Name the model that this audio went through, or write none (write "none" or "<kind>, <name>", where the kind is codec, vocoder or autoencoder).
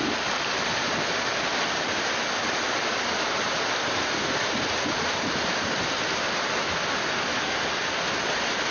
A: none